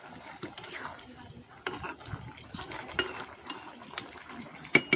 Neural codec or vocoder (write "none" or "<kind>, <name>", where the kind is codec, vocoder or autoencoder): none